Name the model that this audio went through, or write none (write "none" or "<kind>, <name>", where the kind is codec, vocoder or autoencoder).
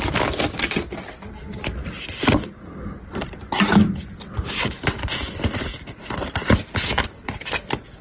none